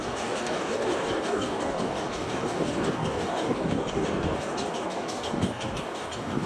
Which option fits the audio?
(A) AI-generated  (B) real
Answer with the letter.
A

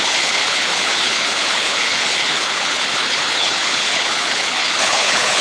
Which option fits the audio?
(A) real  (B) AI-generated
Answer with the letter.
B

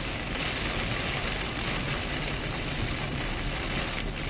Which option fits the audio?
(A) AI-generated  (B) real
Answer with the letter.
B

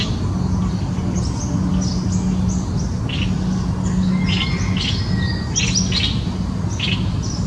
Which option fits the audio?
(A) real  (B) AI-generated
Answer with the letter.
A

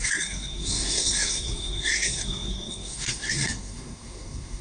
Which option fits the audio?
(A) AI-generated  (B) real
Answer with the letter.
A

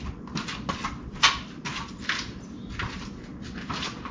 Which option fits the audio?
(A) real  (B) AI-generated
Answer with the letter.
A